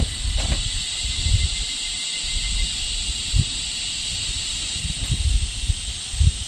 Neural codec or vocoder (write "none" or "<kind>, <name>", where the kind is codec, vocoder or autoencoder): none